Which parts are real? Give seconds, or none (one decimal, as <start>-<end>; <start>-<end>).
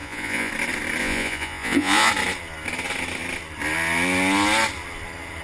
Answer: 0.5-1.0; 2.1-5.4